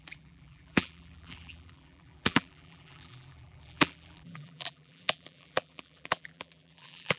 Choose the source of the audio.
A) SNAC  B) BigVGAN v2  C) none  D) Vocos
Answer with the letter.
B